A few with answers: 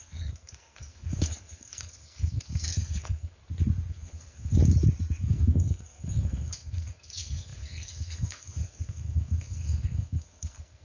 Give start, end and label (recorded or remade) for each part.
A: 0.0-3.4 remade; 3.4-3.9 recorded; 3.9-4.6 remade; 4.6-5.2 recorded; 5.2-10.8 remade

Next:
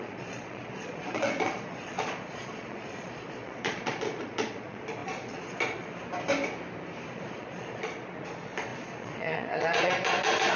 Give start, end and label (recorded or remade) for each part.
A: 0.0-5.9 remade; 5.9-7.1 recorded; 7.1-10.6 remade

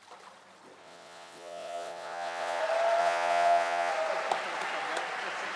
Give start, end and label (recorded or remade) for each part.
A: 0.0-0.8 recorded; 0.8-2.6 remade; 2.6-3.0 recorded; 3.0-3.9 remade; 3.9-5.6 recorded